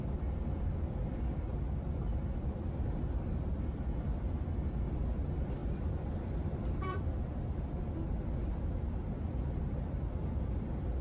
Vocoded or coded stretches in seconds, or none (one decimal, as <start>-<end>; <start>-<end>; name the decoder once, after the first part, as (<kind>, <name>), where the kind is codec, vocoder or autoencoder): 1.5-3.4 (vocoder, BigVGAN v2); 5.6-7.8